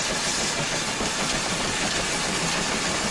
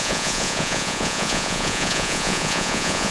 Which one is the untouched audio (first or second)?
first